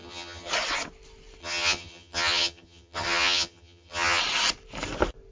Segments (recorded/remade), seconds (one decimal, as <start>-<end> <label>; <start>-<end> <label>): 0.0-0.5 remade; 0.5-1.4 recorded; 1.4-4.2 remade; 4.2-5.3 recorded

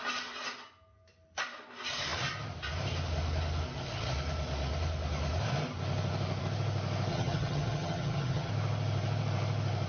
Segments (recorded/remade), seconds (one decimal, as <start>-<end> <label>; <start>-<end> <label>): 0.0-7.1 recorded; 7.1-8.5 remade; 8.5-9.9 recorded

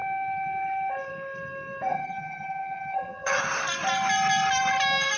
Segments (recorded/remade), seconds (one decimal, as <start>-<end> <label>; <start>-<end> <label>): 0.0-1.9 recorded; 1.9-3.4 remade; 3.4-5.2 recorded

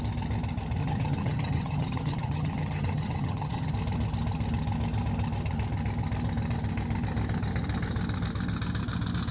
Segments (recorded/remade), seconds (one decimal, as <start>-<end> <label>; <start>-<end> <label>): 0.0-0.8 recorded; 0.8-3.7 remade; 3.7-9.3 recorded

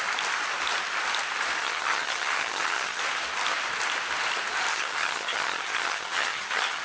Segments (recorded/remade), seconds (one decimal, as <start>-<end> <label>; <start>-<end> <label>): 0.0-1.6 recorded; 1.6-3.0 remade; 3.0-4.7 recorded; 4.7-6.8 remade